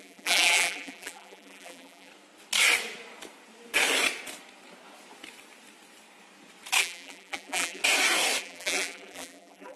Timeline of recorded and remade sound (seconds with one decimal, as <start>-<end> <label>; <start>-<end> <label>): 0.0-2.1 remade; 2.1-6.8 recorded; 6.8-7.8 remade; 7.8-8.4 recorded; 8.4-9.8 remade